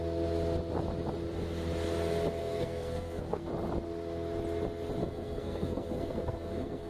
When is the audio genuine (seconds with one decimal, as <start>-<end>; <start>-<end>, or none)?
0.0-2.4; 3.5-5.0